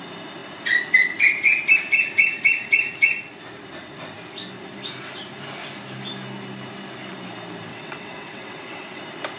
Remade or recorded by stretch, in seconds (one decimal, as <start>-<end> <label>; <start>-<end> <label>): 0.0-7.7 recorded; 7.7-9.0 remade; 9.0-9.4 recorded